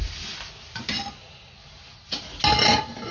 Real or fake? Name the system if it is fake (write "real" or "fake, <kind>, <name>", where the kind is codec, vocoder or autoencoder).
real